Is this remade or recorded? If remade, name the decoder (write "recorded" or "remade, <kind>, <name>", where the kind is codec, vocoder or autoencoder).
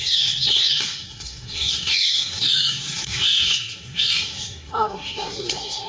remade, codec, SNAC